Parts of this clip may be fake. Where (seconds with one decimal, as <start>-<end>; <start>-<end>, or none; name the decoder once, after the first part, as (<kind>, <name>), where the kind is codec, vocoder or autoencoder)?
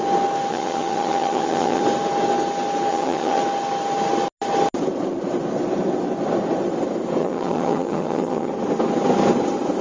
0.5-1.8 (vocoder, HiFi-GAN); 2.9-3.4; 7.2-8.5